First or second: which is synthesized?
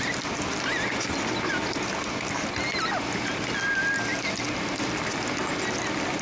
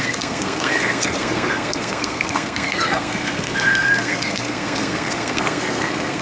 second